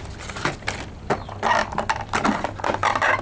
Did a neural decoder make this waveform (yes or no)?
no